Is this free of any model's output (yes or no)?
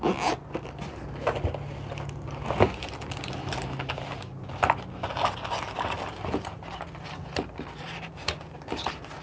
yes